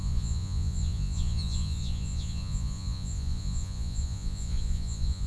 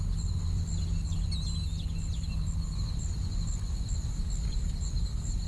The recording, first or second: second